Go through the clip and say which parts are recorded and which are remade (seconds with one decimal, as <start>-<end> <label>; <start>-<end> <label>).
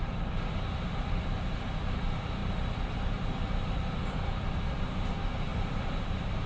0.0-2.4 recorded; 2.4-3.2 remade; 3.2-5.5 recorded; 5.5-6.0 remade; 6.0-6.5 recorded